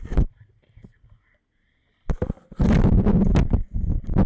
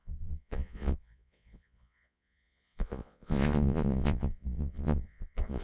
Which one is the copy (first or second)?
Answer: second